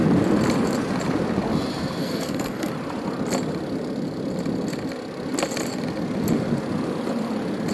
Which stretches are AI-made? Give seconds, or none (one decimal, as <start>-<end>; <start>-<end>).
2.0-2.7